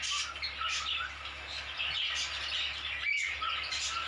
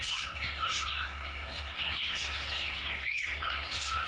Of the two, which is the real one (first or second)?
first